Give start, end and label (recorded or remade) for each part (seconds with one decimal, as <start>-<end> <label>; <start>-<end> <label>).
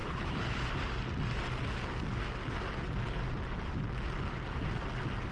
0.0-0.6 remade; 0.6-5.3 recorded